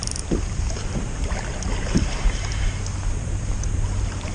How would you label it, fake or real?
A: fake